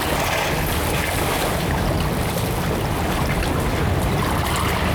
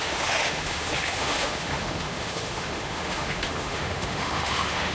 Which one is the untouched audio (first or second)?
first